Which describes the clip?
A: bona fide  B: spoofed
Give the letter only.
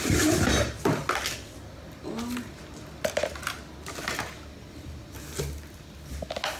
A